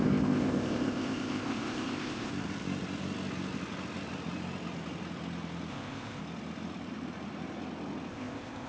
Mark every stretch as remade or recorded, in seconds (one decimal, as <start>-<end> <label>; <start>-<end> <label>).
0.0-2.3 remade; 2.3-5.7 recorded; 5.7-6.2 remade; 6.2-8.1 recorded; 8.1-8.7 remade